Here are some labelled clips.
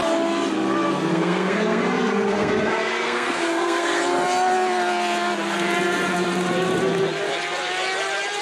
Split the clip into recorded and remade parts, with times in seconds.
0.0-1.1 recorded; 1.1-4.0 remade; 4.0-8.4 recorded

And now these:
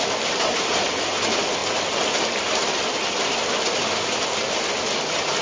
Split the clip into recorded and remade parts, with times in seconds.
0.0-5.4 recorded

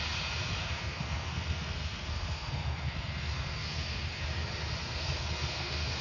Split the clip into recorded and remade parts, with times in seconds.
0.0-0.6 recorded; 0.6-4.2 remade; 4.2-4.8 recorded; 4.8-6.0 remade

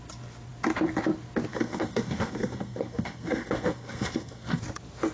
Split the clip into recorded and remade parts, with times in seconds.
0.0-1.5 recorded; 1.5-4.6 remade; 4.6-5.1 recorded

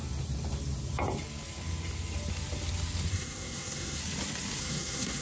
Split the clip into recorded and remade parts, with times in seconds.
0.0-3.1 recorded; 3.1-4.0 remade; 4.0-4.6 recorded; 4.6-5.2 remade